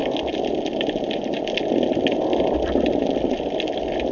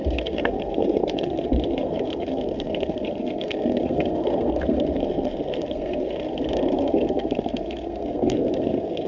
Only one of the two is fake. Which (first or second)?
second